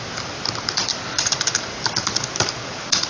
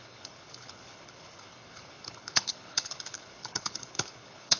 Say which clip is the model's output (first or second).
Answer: second